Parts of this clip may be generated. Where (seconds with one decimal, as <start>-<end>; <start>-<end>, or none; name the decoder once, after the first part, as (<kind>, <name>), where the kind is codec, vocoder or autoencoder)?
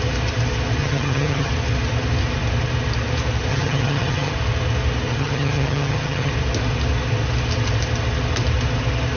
0.8-1.5 (vocoder, HiFi-GAN); 3.5-4.3; 5.1-6.3